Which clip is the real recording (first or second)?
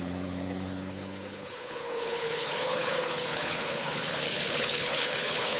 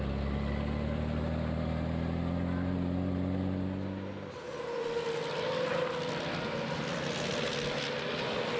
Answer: second